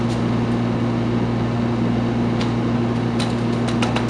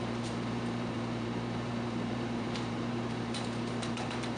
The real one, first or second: first